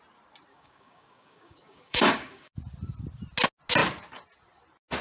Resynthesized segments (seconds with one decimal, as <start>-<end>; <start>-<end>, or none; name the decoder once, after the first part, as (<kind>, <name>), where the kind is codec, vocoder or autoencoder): 0.5-2.5 (codec, DAC)